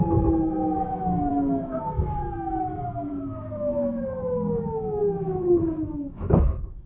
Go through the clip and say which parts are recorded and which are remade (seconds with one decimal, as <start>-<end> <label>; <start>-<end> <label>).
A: 0.0-6.9 remade